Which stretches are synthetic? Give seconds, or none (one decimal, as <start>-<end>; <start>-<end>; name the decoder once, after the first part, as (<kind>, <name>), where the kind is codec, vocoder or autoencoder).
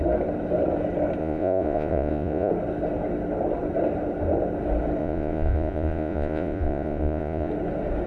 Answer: 1.2-2.5 (vocoder, Vocos); 5.0-7.5